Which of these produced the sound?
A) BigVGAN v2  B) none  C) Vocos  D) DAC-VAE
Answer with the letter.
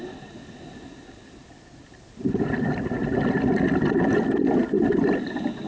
A